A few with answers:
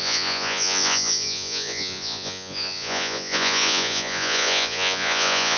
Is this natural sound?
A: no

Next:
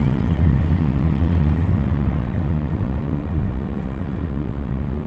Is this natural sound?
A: no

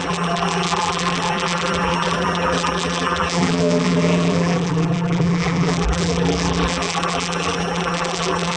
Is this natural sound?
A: no